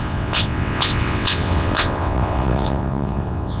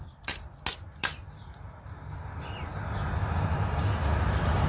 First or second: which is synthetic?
first